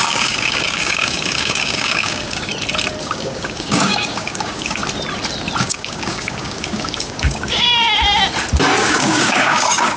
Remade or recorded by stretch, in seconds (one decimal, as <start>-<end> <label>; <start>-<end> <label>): 0.0-2.5 remade; 2.5-3.0 recorded; 3.0-4.8 remade; 4.8-5.6 recorded; 5.6-7.7 remade; 7.7-8.8 recorded; 8.8-10.0 remade